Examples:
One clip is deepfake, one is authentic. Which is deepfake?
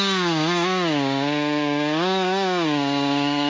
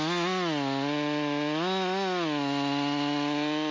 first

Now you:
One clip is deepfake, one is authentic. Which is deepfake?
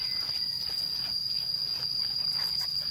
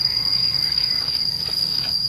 second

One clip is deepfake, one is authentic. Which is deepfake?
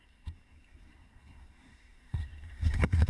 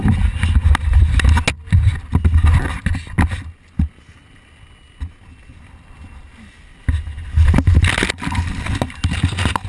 first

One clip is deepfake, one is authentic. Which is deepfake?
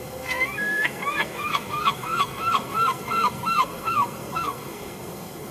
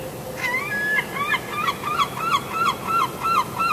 first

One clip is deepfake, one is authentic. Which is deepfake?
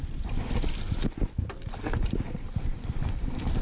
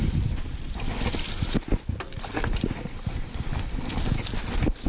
first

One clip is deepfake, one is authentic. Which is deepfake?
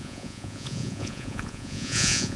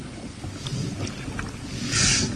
first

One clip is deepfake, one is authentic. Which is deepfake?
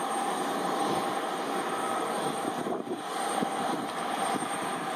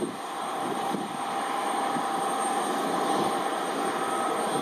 first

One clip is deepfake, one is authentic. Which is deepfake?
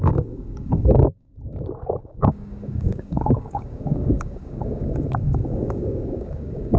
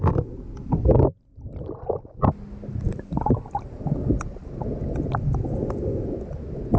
first